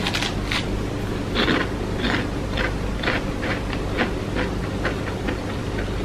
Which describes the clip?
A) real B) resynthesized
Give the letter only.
A